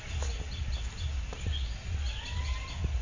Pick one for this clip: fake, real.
real